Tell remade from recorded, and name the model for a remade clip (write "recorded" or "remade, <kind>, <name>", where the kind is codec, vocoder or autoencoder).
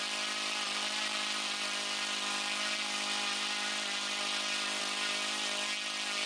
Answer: recorded